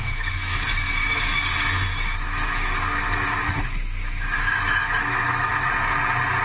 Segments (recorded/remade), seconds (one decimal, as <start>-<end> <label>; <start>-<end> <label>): 0.0-1.4 remade; 1.4-1.9 recorded; 1.9-5.7 remade; 5.7-6.4 recorded